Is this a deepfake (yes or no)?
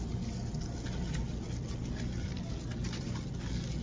no